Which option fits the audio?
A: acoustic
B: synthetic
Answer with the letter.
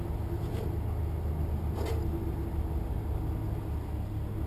A